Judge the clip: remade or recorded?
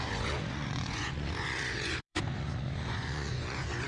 remade